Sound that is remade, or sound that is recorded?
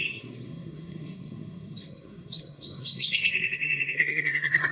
remade